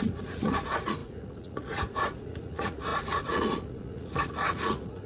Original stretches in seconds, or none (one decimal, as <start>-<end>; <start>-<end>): none